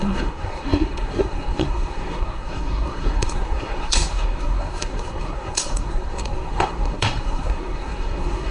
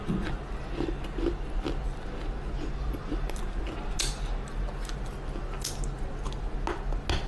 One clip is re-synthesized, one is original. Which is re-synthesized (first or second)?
first